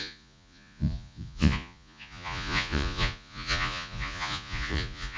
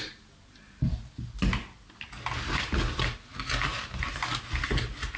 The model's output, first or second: first